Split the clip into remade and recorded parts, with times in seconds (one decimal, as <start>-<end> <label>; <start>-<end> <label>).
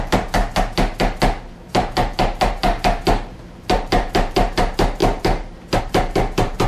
0.0-0.4 remade; 0.4-1.6 recorded; 1.6-2.6 remade; 2.6-3.1 recorded; 3.1-5.0 remade; 5.0-5.8 recorded; 5.8-6.7 remade